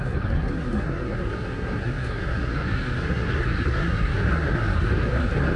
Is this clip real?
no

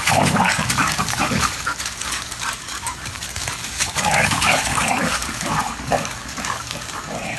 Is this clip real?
no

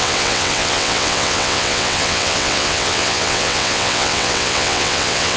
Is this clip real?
no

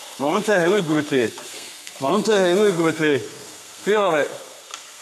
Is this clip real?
no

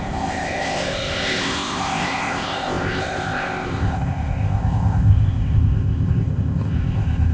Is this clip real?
no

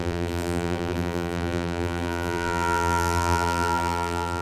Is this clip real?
no